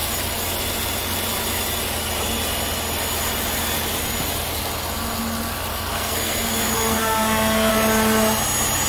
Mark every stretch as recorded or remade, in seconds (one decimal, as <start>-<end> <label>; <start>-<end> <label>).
0.0-5.7 recorded; 5.7-7.7 remade; 7.7-8.9 recorded